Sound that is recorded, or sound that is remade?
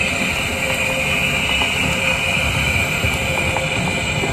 recorded